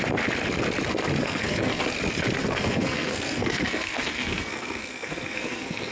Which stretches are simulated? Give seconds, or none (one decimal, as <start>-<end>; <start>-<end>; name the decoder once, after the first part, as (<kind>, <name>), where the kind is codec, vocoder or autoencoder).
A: 1.2-1.8 (codec, SNAC); 2.4-5.9